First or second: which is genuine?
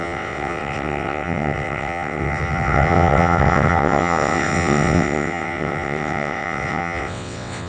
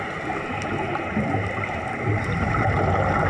second